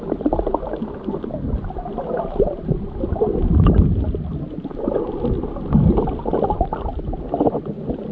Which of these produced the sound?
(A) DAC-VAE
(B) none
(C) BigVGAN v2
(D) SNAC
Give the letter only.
B